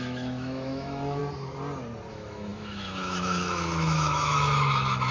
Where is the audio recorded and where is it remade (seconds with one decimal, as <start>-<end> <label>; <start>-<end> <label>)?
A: 0.0-1.2 remade; 1.2-2.1 recorded; 2.1-5.1 remade